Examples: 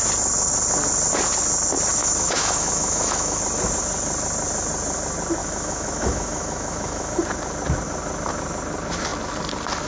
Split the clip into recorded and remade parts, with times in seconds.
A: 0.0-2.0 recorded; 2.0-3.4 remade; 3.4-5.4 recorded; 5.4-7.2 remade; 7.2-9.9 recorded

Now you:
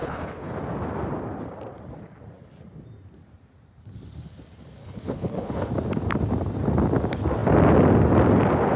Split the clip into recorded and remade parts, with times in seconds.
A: 0.0-0.5 remade; 0.5-4.8 recorded; 4.8-5.7 remade; 5.7-8.8 recorded

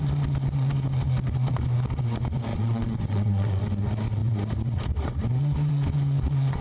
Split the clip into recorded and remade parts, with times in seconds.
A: 0.0-2.5 recorded; 2.5-3.6 remade; 3.6-6.6 recorded

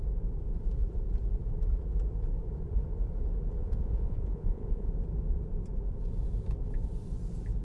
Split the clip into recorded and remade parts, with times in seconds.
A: 0.0-3.6 recorded; 3.6-4.9 remade; 4.9-7.6 recorded

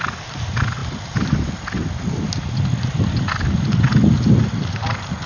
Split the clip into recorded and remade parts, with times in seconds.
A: 0.0-5.3 recorded

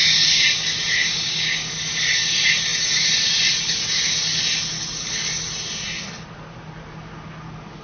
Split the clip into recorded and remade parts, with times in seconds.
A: 0.0-1.0 recorded; 1.0-1.7 remade; 1.7-7.8 recorded